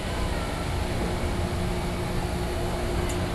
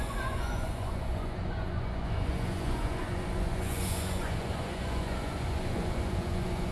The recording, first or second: first